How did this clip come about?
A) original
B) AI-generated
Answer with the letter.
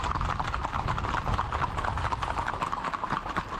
A